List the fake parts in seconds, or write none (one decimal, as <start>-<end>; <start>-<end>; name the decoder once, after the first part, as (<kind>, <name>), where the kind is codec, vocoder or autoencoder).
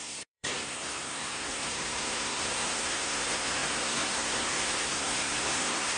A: 0.0-6.0 (codec, SNAC)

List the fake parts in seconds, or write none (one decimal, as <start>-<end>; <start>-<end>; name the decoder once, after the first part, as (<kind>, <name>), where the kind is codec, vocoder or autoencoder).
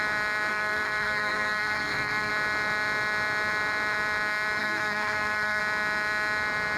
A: 0.5-2.3 (codec, SNAC); 4.6-5.6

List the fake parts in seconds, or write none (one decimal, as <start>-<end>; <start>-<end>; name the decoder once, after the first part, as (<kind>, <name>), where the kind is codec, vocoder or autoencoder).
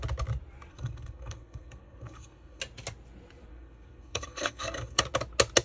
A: 0.7-2.6 (codec, SNAC); 3.5-5.0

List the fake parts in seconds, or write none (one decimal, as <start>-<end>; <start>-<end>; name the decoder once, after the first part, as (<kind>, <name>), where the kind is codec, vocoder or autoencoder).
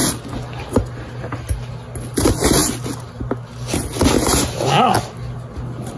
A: none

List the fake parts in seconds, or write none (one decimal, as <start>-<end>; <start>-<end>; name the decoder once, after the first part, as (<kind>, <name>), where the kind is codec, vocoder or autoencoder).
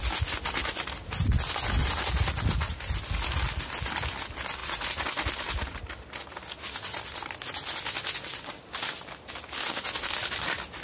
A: none